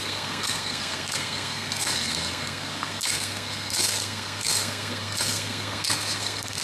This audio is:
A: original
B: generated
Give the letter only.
B